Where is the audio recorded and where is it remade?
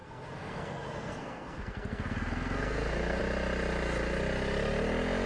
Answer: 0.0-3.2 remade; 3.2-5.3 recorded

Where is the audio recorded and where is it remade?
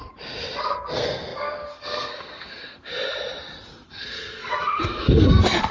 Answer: 0.0-0.6 recorded; 0.6-2.9 remade; 2.9-3.9 recorded; 3.9-5.7 remade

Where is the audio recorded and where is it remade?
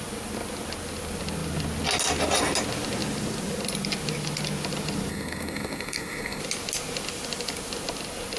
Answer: 0.0-5.1 recorded; 5.1-6.4 remade; 6.4-8.4 recorded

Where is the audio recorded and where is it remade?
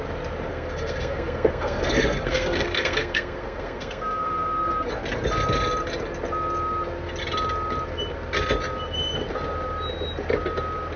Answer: 0.0-0.5 recorded; 0.5-4.9 remade; 4.9-11.0 recorded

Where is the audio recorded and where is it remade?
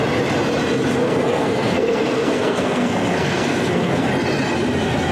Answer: 0.0-1.0 recorded; 1.0-4.1 remade; 4.1-5.1 recorded